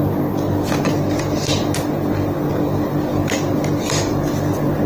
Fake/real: real